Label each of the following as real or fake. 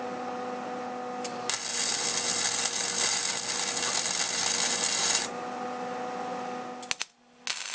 real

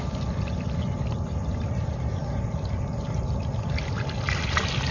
fake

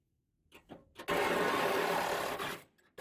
real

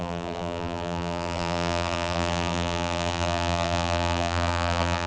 fake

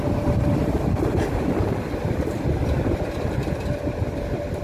fake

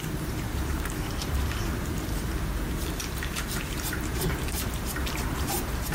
fake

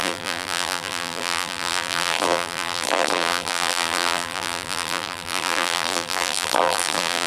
fake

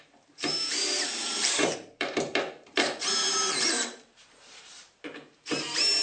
fake